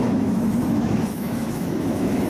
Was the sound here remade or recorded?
remade